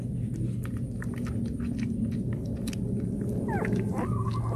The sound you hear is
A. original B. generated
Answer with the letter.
A